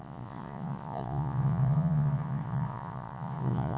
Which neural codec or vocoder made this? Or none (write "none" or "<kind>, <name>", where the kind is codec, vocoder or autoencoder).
vocoder, Vocos